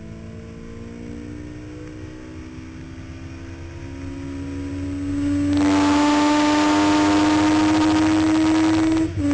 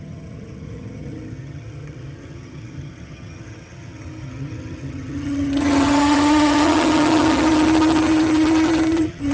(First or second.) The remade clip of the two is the second